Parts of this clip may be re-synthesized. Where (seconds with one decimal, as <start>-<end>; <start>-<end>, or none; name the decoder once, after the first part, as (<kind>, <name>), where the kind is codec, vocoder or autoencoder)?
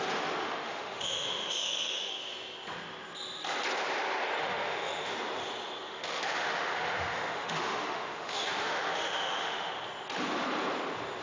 0.4-2.1 (autoencoder, DAC-VAE); 4.4-5.1; 5.9-9.7